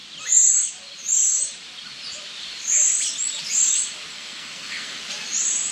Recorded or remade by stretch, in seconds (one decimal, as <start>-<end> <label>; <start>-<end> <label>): 0.0-4.1 recorded; 4.1-5.0 remade; 5.0-5.7 recorded